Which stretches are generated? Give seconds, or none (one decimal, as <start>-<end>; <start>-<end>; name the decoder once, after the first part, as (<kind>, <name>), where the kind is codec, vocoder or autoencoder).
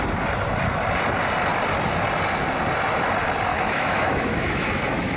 3.5-5.2 (autoencoder, DAC-VAE)